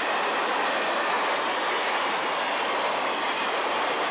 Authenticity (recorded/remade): recorded